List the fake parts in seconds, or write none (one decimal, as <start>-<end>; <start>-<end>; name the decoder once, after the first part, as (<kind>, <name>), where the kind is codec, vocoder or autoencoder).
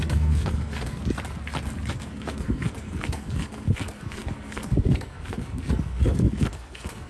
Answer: 0.0-1.0 (codec, SNAC); 1.9-7.1